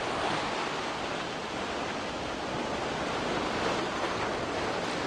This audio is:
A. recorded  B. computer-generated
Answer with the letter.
A